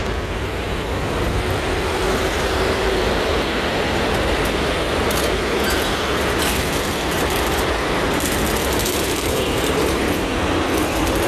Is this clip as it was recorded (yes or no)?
no